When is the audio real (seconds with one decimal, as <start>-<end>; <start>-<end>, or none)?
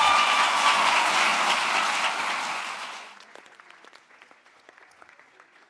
1.3-2.5